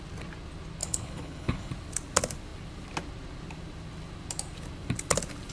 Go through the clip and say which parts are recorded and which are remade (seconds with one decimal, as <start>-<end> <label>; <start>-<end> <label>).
0.0-0.8 recorded; 0.8-1.7 remade; 1.7-5.5 recorded